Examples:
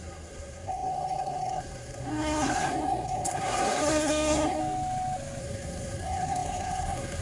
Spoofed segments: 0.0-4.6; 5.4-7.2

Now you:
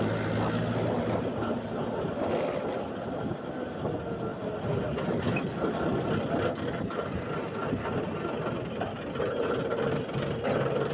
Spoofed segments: none

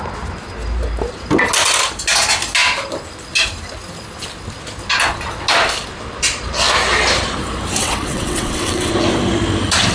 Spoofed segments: 7.8-8.9

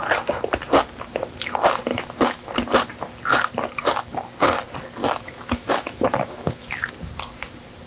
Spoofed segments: 1.9-2.5; 5.0-6.9